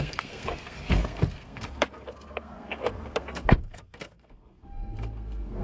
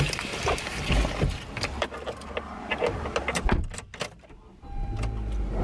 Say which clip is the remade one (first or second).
first